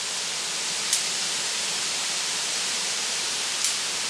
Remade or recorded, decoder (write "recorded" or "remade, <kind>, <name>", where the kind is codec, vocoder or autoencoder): recorded